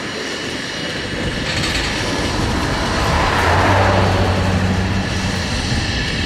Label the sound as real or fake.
real